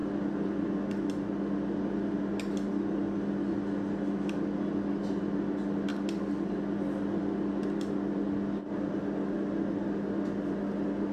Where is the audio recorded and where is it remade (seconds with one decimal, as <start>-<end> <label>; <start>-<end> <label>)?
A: 0.0-11.1 recorded